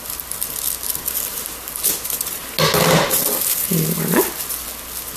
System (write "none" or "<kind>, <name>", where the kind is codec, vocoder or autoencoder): none